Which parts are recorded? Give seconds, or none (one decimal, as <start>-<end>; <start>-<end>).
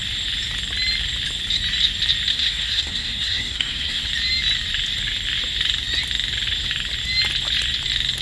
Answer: 0.0-2.3; 4.1-8.2